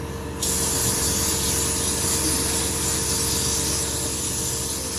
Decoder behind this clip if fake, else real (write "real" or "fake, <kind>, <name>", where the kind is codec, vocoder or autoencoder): real